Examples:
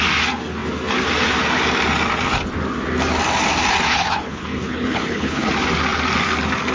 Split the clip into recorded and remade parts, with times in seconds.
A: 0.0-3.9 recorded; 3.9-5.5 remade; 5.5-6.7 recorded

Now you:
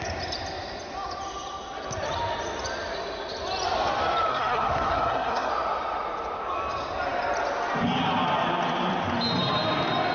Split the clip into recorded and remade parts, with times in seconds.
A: 0.0-4.3 recorded; 4.3-5.5 remade; 5.5-10.1 recorded

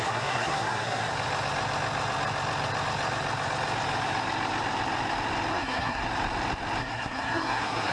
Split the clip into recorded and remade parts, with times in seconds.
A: 0.0-1.1 remade; 1.1-5.5 recorded; 5.5-6.0 remade; 6.0-6.8 recorded; 6.8-7.9 remade

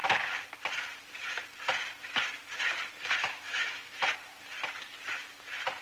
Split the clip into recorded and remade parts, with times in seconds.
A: 0.0-3.2 recorded; 3.2-4.0 remade; 4.0-5.8 recorded